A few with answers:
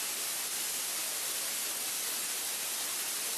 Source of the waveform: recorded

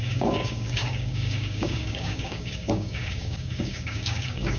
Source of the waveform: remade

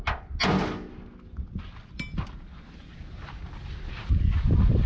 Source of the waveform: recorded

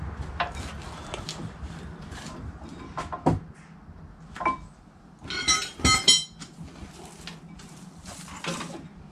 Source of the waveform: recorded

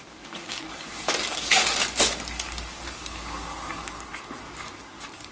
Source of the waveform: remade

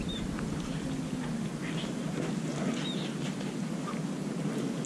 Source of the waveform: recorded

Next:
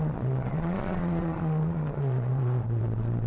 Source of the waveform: remade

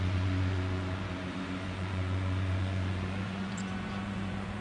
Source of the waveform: remade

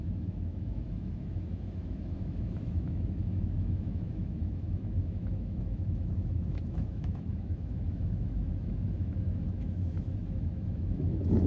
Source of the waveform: remade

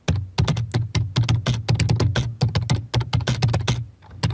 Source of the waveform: recorded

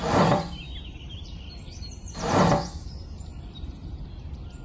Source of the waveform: remade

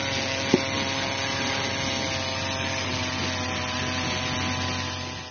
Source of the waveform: recorded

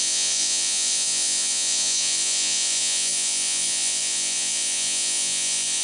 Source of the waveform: remade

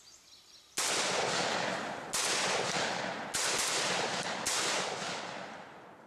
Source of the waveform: recorded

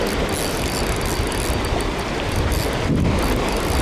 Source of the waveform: recorded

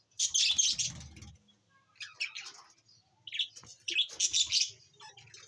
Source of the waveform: recorded